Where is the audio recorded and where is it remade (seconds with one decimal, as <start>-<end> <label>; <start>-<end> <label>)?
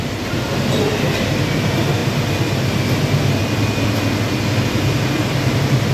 0.0-5.9 recorded